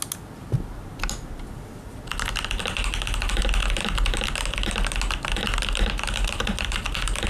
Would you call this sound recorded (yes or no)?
yes